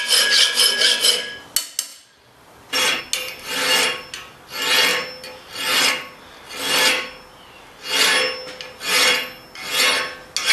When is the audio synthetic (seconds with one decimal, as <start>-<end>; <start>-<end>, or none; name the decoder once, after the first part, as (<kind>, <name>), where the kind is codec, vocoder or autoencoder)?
1.9-3.0 (vocoder, BigVGAN v2); 4.9-5.9